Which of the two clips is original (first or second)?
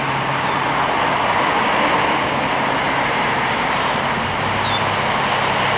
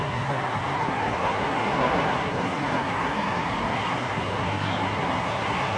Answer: first